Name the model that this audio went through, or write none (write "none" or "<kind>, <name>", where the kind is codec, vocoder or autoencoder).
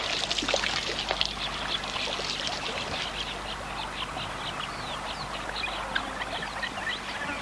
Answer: none